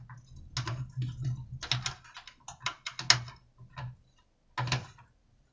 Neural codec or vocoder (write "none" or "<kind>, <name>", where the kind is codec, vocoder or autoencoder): none